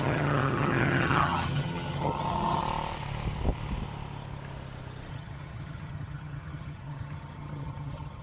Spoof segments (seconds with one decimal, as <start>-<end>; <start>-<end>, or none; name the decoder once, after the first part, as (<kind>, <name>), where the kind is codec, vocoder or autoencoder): 0.0-2.6 (vocoder, HiFi-GAN); 5.1-8.2